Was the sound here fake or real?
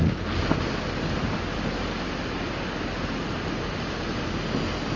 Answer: real